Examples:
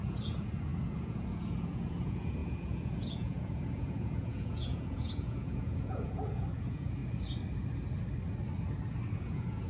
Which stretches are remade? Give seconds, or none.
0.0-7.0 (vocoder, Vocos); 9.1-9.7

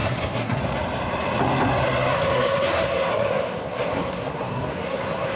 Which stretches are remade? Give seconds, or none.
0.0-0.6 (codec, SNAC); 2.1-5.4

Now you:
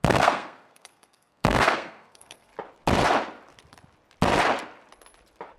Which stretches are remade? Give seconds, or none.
0.0-2.5 (codec, SNAC)

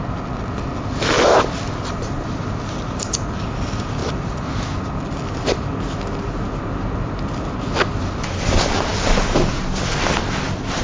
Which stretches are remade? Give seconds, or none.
4.0-4.6 (vocoder, BigVGAN v2)

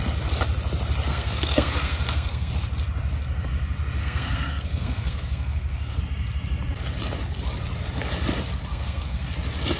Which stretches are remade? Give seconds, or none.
1.1-2.5 (codec, SNAC); 4.0-6.0; 8.7-9.3

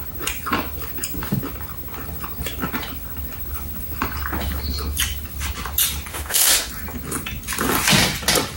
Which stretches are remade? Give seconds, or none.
6.1-6.7 (autoencoder, DAC-VAE)

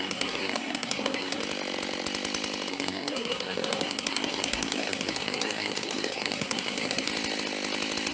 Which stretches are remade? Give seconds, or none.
0.0-1.4 (codec, SNAC); 2.7-7.1

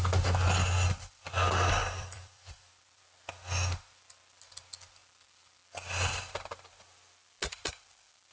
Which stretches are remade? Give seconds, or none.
1.8-3.0 (vocoder, BigVGAN v2)